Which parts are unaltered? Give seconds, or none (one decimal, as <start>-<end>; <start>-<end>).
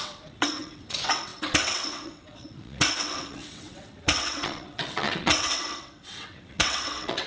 none